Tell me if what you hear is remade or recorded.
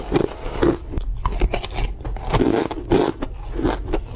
recorded